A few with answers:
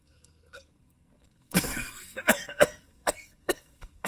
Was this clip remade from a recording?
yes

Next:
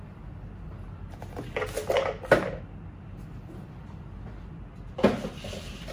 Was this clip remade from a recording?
no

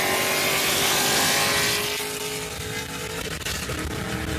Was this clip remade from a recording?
no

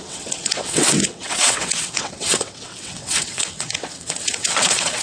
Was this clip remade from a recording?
yes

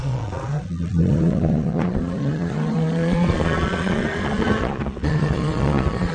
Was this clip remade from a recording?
yes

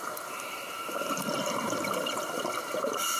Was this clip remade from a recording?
yes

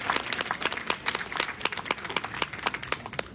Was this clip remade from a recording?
no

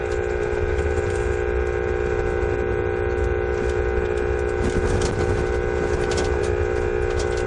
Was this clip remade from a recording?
no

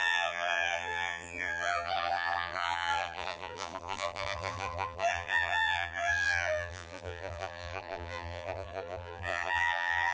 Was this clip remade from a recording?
yes